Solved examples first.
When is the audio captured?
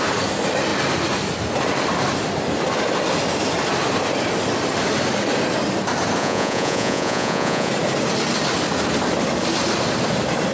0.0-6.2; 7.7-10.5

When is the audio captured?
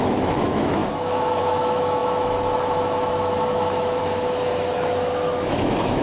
none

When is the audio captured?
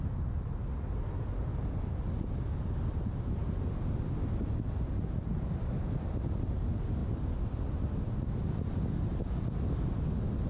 0.0-10.5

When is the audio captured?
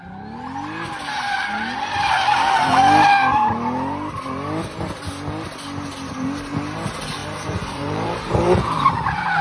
0.0-7.2; 8.8-9.4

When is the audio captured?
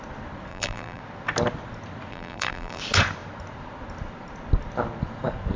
0.0-0.5; 1.0-2.1; 2.8-5.6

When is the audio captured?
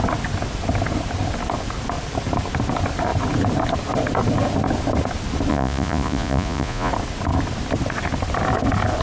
0.0-5.5; 6.9-9.0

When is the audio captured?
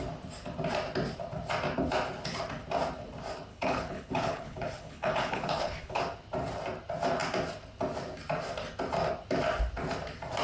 0.0-3.5; 6.0-10.4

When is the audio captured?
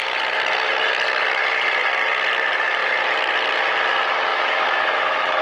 0.0-4.3